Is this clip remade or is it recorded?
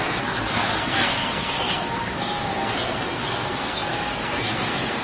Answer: remade